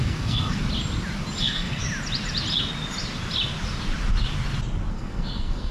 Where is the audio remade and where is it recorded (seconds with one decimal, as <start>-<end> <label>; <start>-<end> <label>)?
0.0-0.6 remade; 0.6-1.4 recorded; 1.4-1.8 remade; 1.8-4.9 recorded; 4.9-5.7 remade